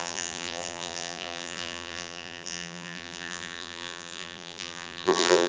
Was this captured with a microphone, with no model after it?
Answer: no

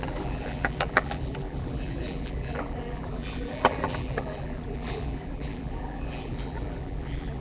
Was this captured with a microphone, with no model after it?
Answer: no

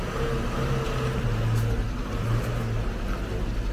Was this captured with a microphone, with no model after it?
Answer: yes